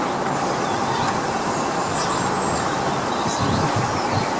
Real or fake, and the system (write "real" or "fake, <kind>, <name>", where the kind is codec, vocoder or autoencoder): real